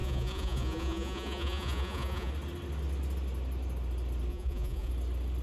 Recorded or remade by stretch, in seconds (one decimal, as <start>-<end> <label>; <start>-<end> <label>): 0.0-2.3 remade; 2.3-4.3 recorded; 4.3-4.9 remade; 4.9-5.4 recorded